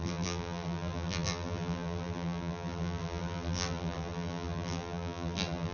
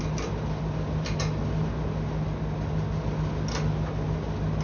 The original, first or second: second